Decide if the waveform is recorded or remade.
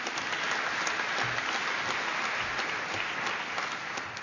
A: recorded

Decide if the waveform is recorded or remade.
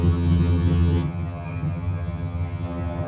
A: remade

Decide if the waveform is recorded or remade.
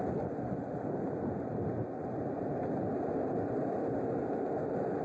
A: recorded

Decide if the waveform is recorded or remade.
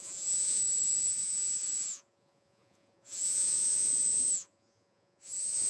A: remade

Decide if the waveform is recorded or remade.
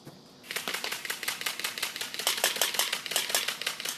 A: recorded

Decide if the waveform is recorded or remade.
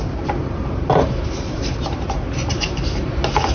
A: remade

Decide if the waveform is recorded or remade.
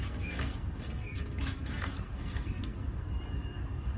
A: remade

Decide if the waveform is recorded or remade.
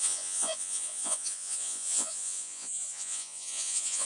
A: remade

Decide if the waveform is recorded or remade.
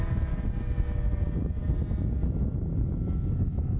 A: recorded